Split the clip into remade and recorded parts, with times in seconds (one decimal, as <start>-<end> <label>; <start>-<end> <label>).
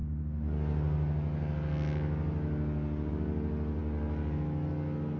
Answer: 0.0-5.2 recorded